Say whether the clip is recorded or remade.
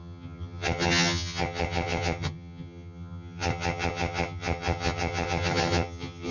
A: remade